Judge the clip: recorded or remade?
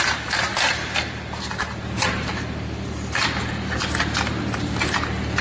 recorded